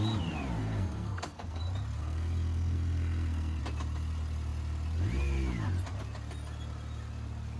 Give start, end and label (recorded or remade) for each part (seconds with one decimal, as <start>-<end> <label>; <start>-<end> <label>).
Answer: 0.0-0.6 recorded; 0.6-1.6 remade; 1.6-2.0 recorded; 2.0-3.6 remade; 3.6-7.6 recorded